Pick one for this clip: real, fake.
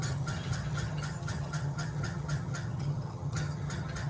fake